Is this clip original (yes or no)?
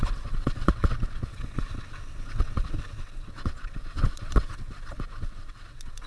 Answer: no